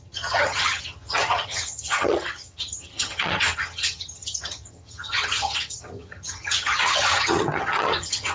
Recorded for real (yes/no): no